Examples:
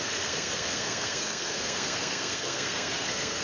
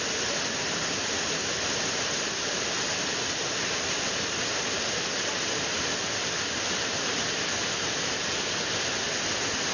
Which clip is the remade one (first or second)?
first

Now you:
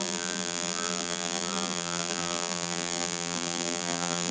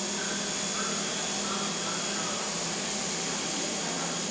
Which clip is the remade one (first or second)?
first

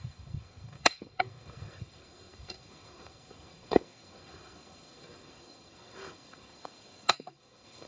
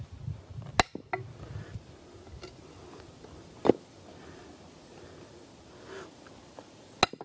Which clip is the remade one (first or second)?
first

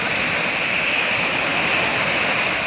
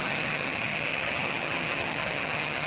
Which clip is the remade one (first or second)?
second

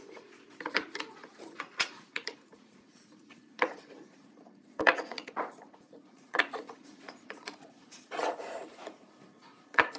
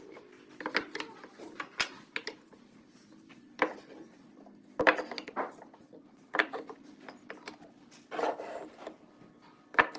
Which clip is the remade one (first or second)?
first